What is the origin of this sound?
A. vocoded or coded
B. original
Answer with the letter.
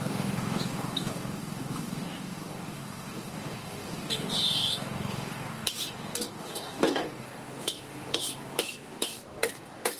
A